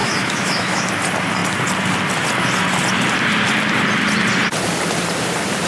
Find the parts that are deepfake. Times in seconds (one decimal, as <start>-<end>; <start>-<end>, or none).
0.0-0.9